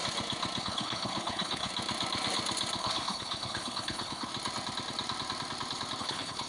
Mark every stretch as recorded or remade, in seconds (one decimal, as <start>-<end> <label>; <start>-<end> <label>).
0.0-0.6 recorded; 0.6-1.7 remade; 1.7-2.8 recorded; 2.8-4.3 remade; 4.3-6.0 recorded; 6.0-6.5 remade